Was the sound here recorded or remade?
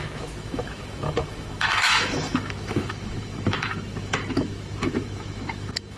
remade